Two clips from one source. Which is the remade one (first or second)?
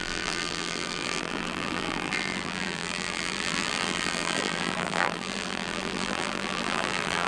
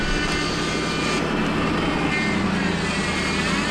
first